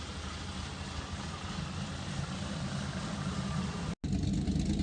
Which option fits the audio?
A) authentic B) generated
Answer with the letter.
A